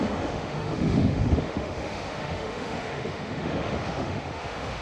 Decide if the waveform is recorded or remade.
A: remade